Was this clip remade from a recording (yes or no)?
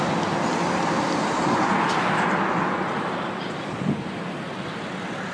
no